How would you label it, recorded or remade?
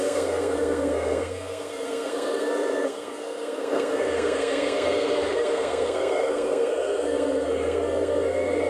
remade